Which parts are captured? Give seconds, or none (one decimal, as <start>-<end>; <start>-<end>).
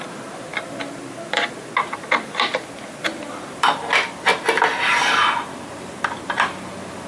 0.0-2.5; 3.8-4.3; 5.9-7.1